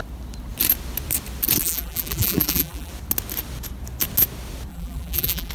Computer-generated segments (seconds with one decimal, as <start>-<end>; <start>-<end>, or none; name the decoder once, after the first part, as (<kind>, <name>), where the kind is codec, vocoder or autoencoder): 1.6-2.9 (vocoder, BigVGAN v2); 4.7-5.5